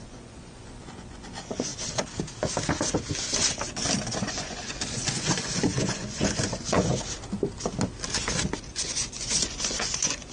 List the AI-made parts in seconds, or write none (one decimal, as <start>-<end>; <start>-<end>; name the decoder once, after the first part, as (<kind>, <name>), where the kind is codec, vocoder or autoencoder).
0.0-1.7 (vocoder, Vocos); 4.2-6.9; 8.6-10.3